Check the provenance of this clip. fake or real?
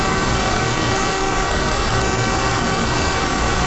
fake